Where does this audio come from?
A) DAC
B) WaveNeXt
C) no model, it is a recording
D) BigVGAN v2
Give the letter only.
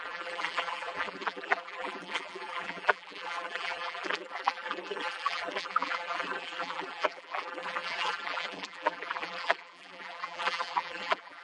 D